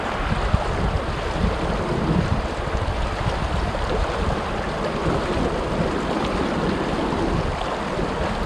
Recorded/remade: recorded